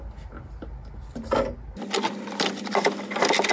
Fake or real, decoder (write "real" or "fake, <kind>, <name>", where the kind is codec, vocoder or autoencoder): real